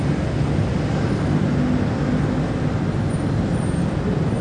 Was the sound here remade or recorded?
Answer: recorded